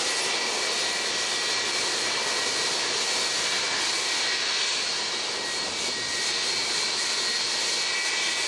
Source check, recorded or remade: recorded